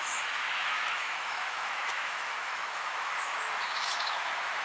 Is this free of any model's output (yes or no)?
no